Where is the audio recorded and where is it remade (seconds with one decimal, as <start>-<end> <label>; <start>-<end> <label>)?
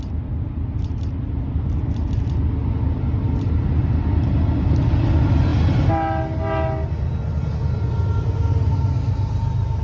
0.0-9.8 recorded